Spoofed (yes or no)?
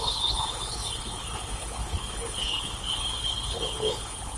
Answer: yes